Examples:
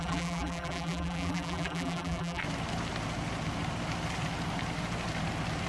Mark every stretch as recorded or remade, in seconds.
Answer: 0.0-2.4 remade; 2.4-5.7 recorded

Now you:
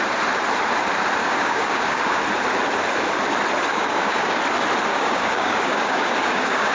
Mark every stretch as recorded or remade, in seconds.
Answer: 0.0-1.2 recorded; 1.2-2.2 remade; 2.2-3.7 recorded; 3.7-4.4 remade; 4.4-4.9 recorded; 4.9-6.7 remade

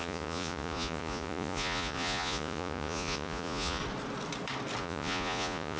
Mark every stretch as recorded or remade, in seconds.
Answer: 0.0-3.8 remade; 3.8-4.8 recorded; 4.8-5.8 remade